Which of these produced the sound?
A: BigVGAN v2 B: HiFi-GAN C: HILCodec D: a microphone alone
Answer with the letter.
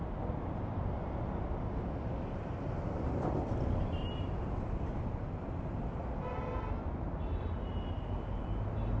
D